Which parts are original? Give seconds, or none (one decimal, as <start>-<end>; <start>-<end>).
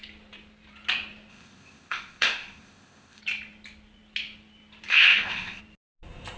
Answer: 0.0-1.3; 3.2-4.9; 5.6-6.4